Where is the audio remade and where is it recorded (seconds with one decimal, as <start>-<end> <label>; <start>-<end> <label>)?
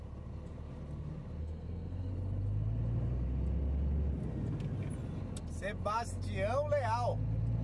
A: 0.0-1.4 recorded; 1.4-2.1 remade; 2.1-7.6 recorded